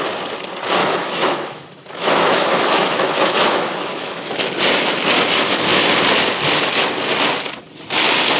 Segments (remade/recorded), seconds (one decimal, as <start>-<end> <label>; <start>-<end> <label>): 0.0-0.8 recorded; 0.8-4.3 remade; 4.3-8.4 recorded